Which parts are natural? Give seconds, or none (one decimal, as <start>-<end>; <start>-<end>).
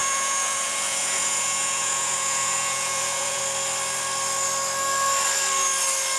3.4-6.2